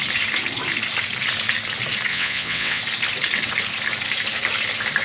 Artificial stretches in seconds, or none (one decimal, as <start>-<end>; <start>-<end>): 2.1-2.8